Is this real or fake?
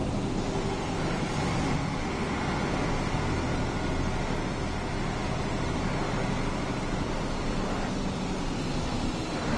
real